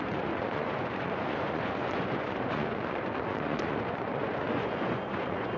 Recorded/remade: remade